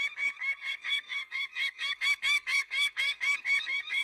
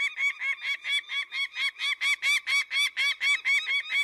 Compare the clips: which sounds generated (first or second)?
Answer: first